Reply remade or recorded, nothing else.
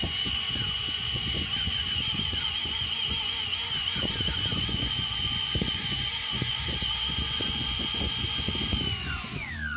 remade